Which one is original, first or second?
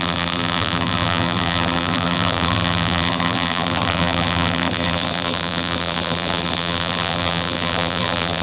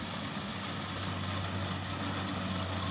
second